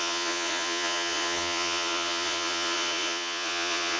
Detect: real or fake fake